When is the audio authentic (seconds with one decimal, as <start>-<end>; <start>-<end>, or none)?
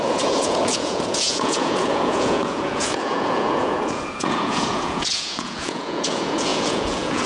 none